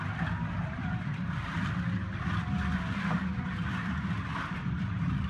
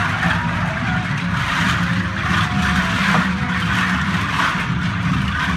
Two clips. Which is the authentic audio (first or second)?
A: second